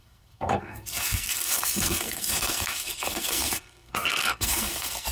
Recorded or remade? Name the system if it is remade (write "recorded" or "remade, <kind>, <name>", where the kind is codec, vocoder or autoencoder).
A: remade, codec, SNAC